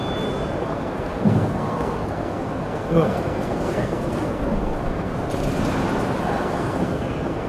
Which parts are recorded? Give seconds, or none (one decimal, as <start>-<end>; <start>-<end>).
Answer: 0.0-0.6; 5.1-6.2